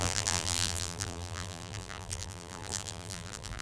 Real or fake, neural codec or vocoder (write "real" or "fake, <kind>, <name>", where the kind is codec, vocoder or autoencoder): fake, vocoder, BigVGAN v2